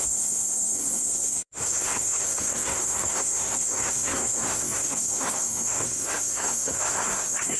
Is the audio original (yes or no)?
no